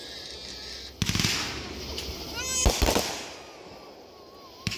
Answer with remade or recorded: recorded